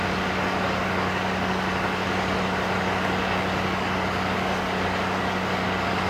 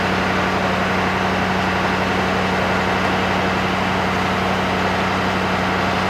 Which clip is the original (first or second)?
second